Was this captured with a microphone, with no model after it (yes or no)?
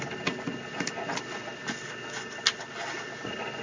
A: yes